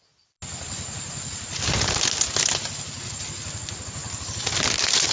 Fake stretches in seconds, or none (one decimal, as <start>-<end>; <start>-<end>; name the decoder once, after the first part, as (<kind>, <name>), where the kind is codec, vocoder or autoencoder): 4.0-4.5 (vocoder, BigVGAN v2)